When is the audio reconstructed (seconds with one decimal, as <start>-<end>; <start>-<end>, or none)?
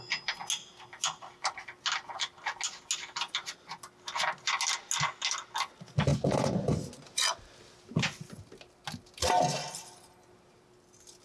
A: 6.1-6.8